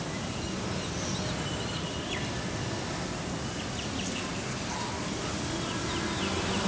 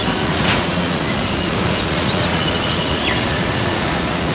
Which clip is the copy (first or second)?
second